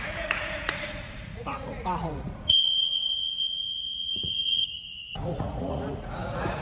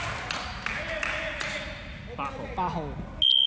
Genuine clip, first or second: second